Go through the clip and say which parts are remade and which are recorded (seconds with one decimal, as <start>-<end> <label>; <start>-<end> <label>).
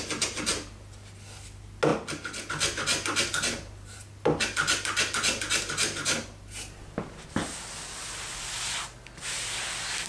0.0-10.1 recorded